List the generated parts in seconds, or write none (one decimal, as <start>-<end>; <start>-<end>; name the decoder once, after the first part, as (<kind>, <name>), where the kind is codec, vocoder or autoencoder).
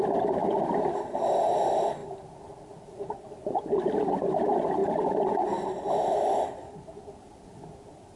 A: none